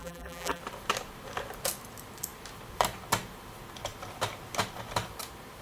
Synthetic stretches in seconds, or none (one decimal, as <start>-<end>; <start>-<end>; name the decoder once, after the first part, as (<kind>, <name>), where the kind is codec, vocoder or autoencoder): 0.0-0.6 (vocoder, BigVGAN v2)